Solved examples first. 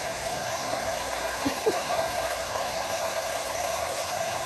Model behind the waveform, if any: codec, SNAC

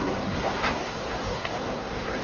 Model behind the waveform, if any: codec, SNAC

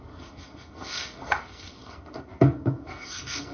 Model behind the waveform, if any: codec, SNAC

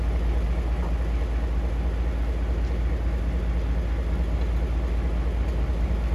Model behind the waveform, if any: none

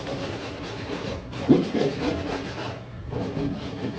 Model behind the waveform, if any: codec, SNAC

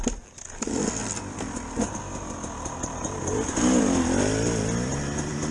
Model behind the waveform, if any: none